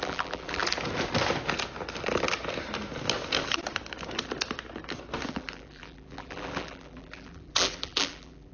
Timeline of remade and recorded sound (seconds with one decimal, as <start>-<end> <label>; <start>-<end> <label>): 0.0-0.6 remade; 0.6-5.3 recorded; 5.3-8.5 remade